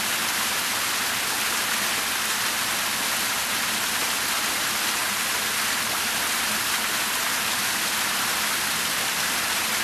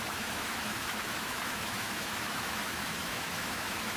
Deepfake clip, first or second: second